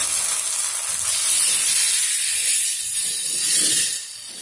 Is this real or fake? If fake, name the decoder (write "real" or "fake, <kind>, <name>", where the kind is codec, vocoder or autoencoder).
real